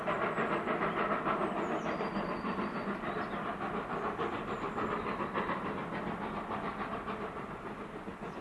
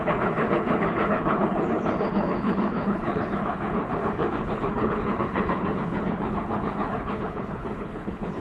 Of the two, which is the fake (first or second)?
second